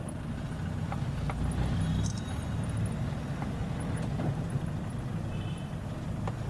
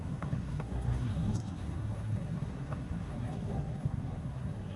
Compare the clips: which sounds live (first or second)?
first